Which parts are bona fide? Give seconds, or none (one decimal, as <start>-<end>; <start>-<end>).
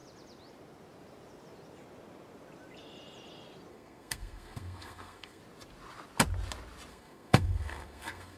0.0-3.7; 5.4-6.9